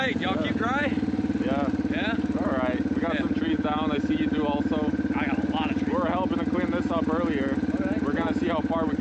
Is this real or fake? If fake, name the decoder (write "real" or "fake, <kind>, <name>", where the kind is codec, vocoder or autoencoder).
real